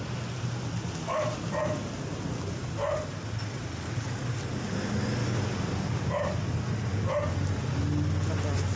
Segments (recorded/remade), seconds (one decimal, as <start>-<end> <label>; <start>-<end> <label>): 0.0-8.8 recorded